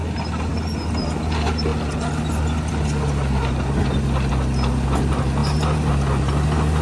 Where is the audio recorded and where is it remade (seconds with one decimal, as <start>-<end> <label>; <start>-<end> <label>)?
0.0-6.8 recorded